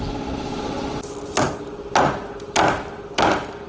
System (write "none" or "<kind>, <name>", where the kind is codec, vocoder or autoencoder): none